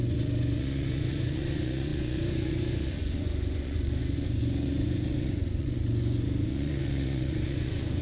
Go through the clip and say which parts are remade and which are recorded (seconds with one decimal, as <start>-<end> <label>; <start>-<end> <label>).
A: 0.0-8.0 remade